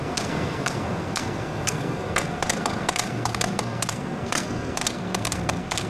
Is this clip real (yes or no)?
no